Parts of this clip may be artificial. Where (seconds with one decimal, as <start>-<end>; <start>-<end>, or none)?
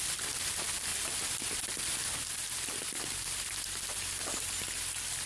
none